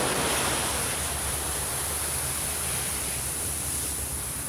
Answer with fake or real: real